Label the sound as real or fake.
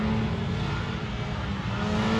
real